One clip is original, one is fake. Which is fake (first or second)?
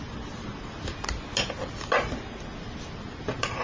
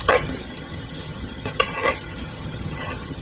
second